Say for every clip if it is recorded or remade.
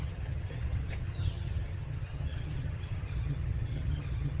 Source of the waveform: remade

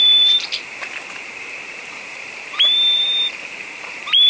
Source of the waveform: remade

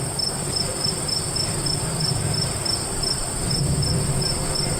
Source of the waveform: recorded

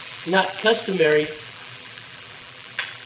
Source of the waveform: remade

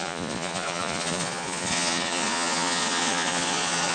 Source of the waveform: remade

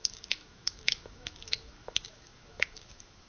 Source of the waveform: remade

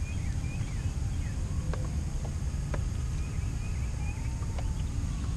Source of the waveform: recorded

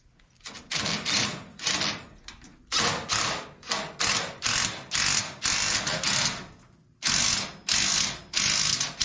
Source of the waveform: recorded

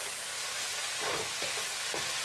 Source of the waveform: recorded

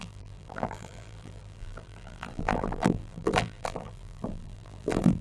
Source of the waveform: remade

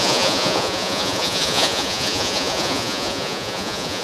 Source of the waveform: remade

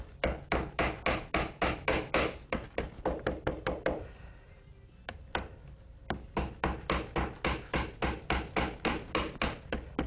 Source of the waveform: recorded